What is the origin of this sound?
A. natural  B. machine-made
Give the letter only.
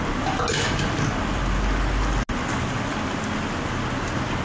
A